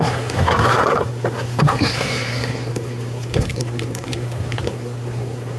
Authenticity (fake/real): fake